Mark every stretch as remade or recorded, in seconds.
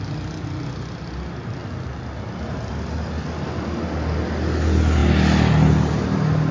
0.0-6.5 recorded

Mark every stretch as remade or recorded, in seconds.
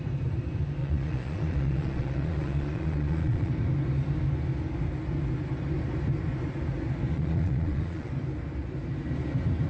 0.0-0.8 recorded; 0.8-3.5 remade; 3.5-7.1 recorded; 7.1-8.1 remade; 8.1-9.7 recorded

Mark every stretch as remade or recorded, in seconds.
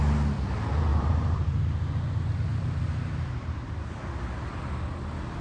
0.0-0.9 recorded; 0.9-1.6 remade; 1.6-2.5 recorded; 2.5-4.0 remade; 4.0-5.4 recorded